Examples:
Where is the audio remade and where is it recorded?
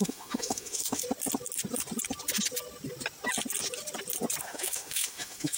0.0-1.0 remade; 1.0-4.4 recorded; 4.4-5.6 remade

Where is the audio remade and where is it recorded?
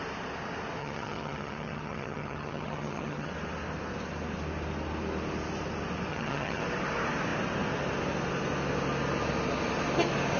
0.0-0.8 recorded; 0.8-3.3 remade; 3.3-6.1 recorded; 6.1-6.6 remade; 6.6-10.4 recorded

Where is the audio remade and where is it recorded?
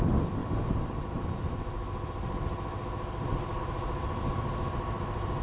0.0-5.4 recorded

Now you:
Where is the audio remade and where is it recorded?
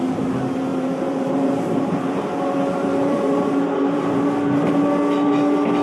0.0-0.7 recorded; 0.7-4.2 remade; 4.2-5.8 recorded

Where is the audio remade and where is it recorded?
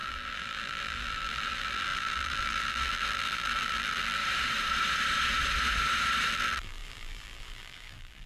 0.0-4.2 remade; 4.2-6.3 recorded; 6.3-8.3 remade